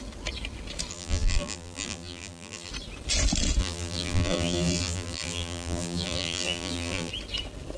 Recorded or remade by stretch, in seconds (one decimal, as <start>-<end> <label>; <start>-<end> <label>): 0.0-0.9 recorded; 0.9-2.7 remade; 2.7-3.6 recorded; 3.6-7.1 remade; 7.1-7.8 recorded